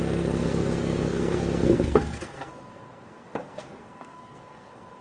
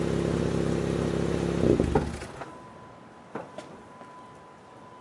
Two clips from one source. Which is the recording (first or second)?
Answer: second